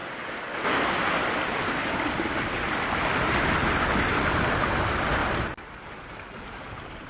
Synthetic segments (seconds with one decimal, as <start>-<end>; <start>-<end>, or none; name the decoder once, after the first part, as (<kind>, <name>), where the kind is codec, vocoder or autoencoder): 5.2-7.1 (vocoder, BigVGAN v2)